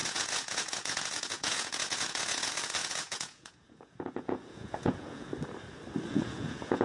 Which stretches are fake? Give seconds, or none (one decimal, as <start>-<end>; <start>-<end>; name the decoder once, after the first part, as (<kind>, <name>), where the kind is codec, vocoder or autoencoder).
0.0-5.3 (vocoder, Vocos); 6.1-6.8

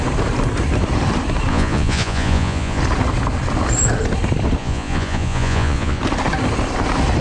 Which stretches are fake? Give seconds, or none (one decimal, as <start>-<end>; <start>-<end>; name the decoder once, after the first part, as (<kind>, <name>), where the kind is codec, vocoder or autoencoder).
1.5-2.8 (vocoder, Vocos); 4.6-6.0

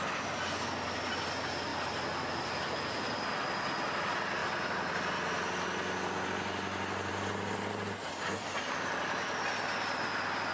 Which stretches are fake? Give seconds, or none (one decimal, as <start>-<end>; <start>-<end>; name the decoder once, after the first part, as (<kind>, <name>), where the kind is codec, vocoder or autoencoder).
none

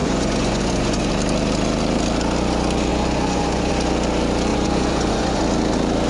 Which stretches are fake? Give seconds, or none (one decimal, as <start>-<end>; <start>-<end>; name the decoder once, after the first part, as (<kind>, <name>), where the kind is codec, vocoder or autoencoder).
0.0-1.1 (vocoder, Vocos); 2.9-3.7; 4.5-5.4

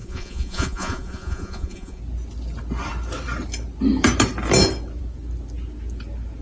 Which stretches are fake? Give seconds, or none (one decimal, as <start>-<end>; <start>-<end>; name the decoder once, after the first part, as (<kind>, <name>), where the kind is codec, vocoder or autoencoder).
0.0-2.0 (vocoder, Vocos)

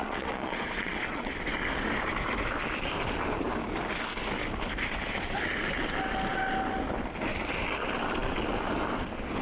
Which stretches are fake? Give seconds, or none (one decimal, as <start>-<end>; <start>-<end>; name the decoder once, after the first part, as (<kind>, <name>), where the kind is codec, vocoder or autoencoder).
0.0-1.3 (vocoder, Vocos)

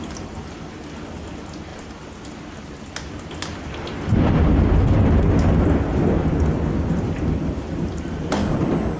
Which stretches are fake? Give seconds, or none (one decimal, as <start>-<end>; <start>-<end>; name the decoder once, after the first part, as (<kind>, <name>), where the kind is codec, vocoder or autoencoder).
none

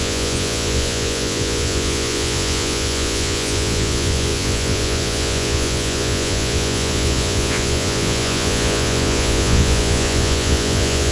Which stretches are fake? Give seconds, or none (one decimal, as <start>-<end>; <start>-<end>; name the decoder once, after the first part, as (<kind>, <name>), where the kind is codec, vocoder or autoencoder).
0.0-11.1 (vocoder, Vocos)